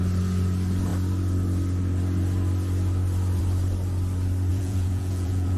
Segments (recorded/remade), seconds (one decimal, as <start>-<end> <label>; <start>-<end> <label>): 0.0-4.5 recorded; 4.5-5.6 remade